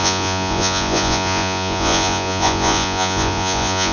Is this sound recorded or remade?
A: remade